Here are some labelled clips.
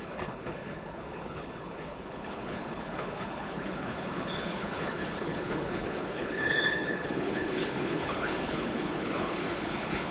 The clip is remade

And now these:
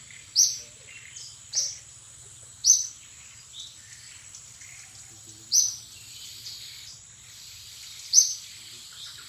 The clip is remade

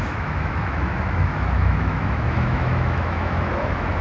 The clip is remade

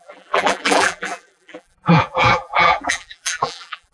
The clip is remade